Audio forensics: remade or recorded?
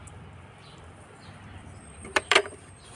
remade